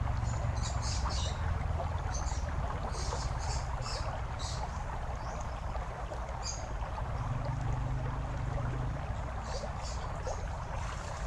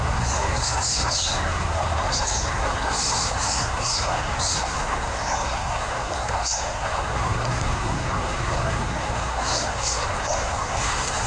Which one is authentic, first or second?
first